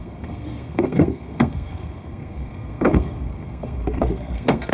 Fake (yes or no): yes